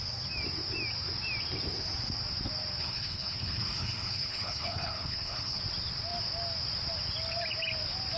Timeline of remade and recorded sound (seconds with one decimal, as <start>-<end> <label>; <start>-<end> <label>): 0.0-2.8 recorded; 2.8-5.6 remade; 5.6-8.2 recorded